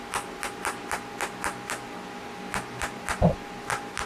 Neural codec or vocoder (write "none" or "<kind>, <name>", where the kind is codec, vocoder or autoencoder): none